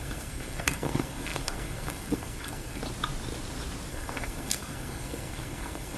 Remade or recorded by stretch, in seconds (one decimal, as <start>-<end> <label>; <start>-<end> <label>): 0.0-2.8 remade; 2.8-3.9 recorded; 3.9-6.0 remade